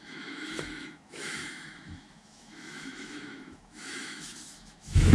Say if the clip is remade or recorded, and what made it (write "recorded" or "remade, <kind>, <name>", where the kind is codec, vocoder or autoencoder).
remade, autoencoder, DAC-VAE